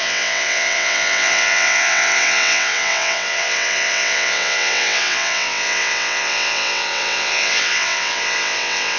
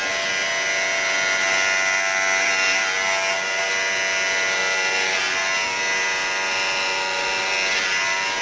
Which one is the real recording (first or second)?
second